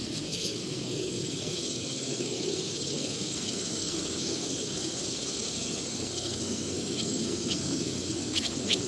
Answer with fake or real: fake